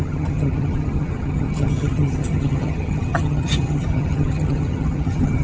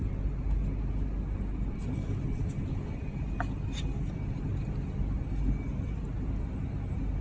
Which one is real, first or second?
second